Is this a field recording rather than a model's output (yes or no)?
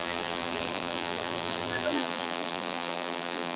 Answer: no